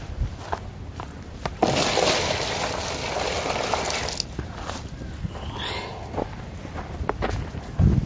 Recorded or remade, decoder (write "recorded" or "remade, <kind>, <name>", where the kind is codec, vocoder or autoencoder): recorded